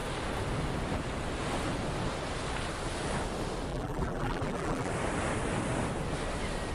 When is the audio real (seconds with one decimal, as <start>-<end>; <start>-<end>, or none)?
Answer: 0.0-3.7; 4.9-6.7